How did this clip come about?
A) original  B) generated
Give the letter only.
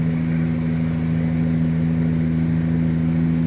A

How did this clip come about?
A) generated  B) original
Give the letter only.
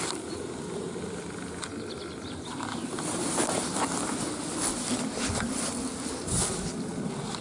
B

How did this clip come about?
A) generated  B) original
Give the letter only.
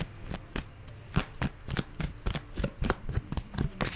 B